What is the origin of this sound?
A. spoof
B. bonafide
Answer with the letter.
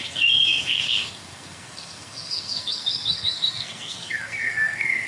A